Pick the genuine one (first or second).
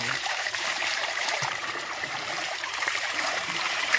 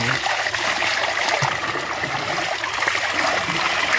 second